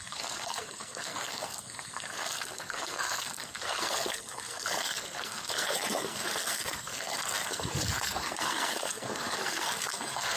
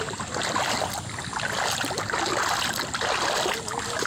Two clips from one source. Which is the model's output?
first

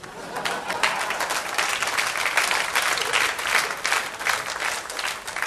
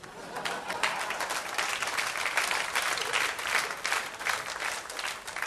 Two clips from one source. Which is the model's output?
second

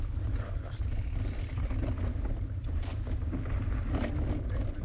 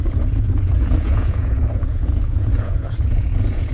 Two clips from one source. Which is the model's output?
second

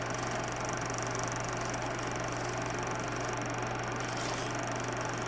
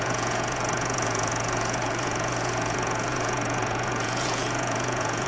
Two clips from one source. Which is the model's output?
second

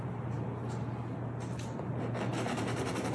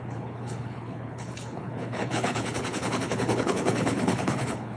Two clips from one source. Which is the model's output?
second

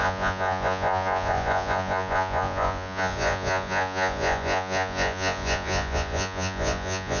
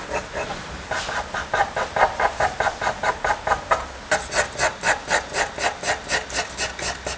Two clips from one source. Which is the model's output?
first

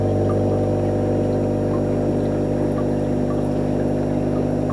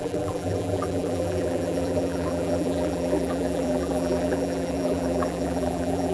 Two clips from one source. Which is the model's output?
second